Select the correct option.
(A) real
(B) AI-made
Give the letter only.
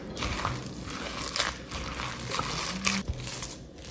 A